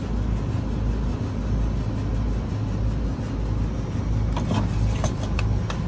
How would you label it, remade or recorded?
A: recorded